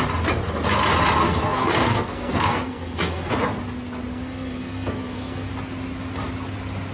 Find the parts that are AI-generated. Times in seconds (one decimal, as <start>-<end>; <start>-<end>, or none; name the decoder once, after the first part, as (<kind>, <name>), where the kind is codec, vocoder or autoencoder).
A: 1.2-3.3 (codec, SNAC); 4.1-5.5